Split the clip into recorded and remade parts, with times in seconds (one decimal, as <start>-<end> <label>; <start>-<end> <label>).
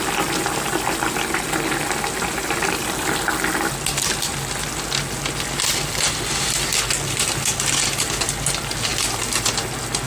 0.0-10.1 recorded